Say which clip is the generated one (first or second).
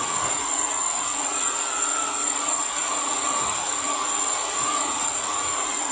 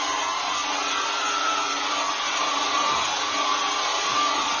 first